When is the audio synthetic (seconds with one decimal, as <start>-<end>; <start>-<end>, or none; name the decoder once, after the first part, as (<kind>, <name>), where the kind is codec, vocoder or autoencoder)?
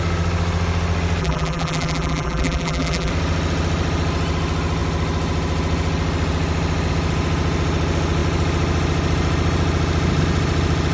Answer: 1.2-3.1 (vocoder, BigVGAN v2)